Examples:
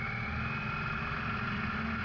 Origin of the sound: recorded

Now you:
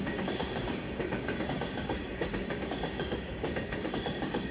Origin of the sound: remade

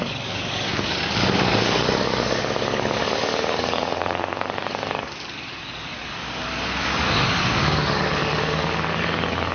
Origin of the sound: remade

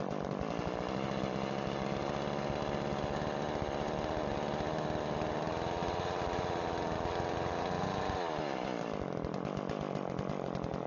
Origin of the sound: recorded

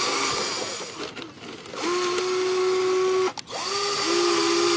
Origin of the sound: recorded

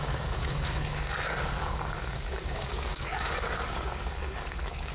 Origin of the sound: remade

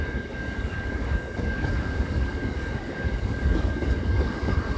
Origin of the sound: remade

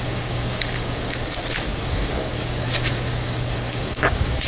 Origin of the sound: remade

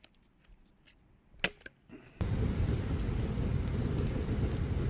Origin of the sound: recorded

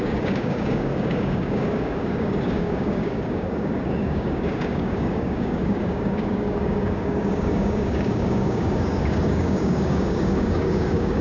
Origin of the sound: remade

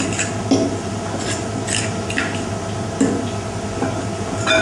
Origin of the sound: recorded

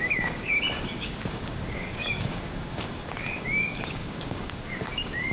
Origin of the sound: remade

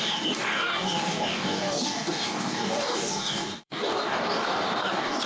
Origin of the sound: remade